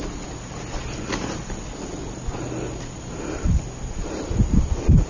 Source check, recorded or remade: recorded